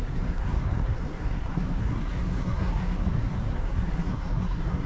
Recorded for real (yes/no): no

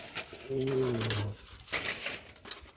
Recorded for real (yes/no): yes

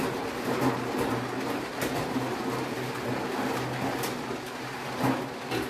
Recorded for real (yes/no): yes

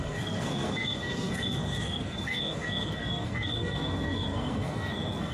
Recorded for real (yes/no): no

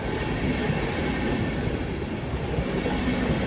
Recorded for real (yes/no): yes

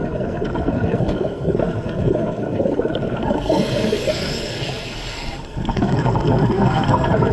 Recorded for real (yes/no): no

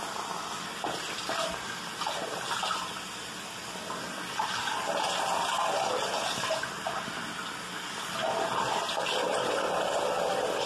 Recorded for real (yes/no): yes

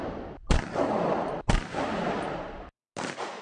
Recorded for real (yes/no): yes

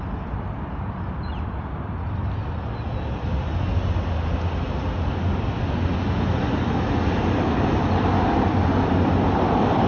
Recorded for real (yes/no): yes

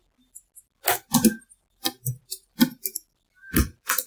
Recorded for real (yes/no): yes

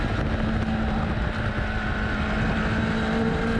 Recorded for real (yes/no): yes